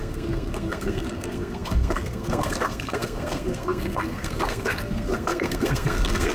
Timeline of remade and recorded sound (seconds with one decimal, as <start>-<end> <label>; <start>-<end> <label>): 0.0-6.3 remade